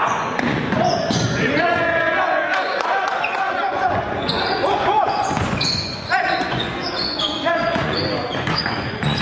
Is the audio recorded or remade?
remade